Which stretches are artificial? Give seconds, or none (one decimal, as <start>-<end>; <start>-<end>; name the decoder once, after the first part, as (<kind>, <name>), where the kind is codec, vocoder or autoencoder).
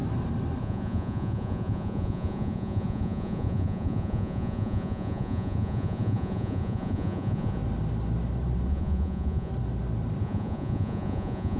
0.6-7.6 (vocoder, Vocos); 8.7-9.5; 10.2-11.6